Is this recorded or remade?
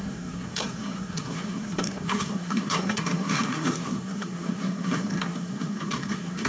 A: remade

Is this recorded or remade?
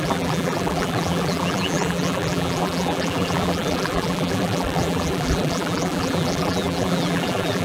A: remade